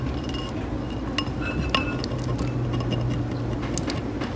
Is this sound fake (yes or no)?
no